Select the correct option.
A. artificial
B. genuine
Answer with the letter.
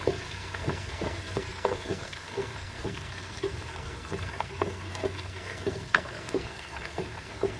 A